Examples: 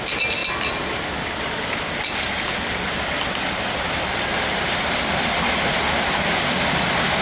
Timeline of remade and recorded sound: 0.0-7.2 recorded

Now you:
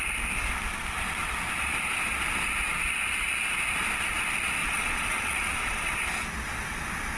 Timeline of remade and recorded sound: 0.0-4.6 recorded; 4.6-5.9 remade; 5.9-7.2 recorded

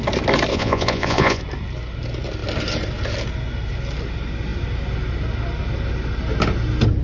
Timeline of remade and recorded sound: 0.0-0.5 recorded; 0.5-1.4 remade; 1.4-7.0 recorded